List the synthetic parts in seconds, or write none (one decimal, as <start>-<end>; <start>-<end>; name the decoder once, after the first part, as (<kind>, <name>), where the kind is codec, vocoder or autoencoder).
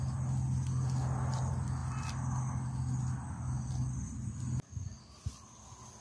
none